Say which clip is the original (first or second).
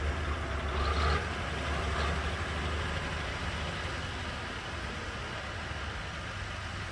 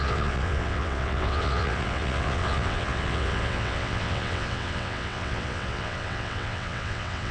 first